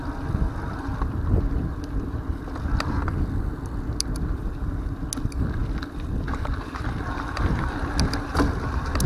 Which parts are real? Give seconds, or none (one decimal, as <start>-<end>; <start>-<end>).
0.0-9.1